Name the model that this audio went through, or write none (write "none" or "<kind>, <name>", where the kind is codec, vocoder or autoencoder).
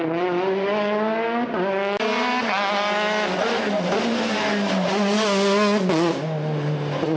none